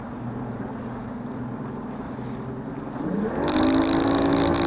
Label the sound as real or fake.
real